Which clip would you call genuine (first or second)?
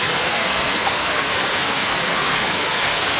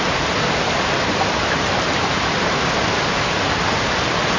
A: second